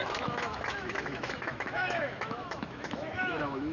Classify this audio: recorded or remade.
remade